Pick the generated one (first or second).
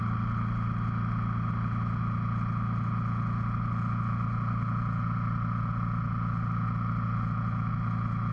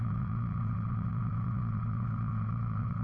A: second